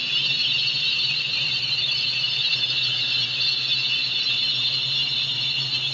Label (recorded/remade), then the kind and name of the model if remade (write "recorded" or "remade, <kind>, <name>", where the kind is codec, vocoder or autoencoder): recorded